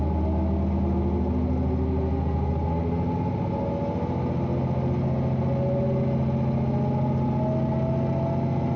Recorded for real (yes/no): yes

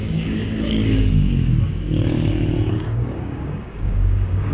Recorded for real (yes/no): no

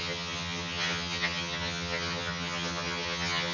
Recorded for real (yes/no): no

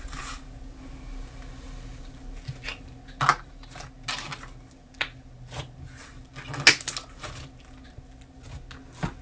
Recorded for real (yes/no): yes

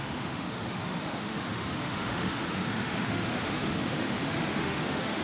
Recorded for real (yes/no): no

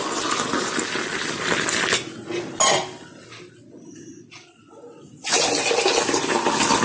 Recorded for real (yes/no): yes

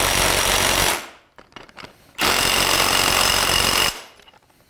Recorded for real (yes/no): yes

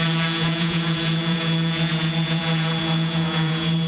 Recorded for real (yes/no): no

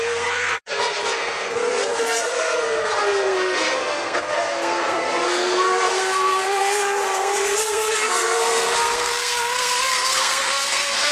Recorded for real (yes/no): no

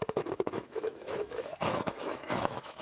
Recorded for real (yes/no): no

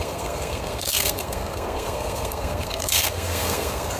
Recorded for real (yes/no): no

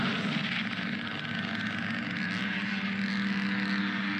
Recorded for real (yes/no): yes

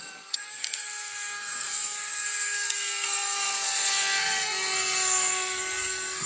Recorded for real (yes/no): no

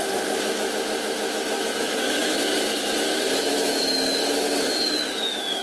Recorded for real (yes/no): no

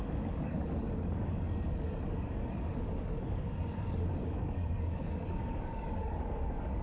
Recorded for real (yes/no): no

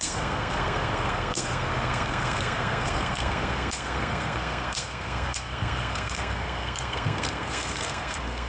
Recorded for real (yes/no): no